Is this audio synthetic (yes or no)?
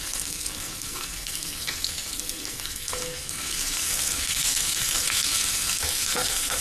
yes